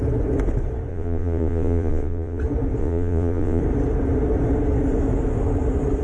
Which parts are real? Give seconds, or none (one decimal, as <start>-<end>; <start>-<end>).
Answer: 0.0-0.9; 2.4-2.8; 3.6-6.0

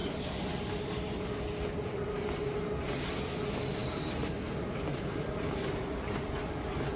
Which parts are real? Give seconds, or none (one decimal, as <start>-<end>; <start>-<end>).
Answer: 0.7-3.8; 5.3-7.0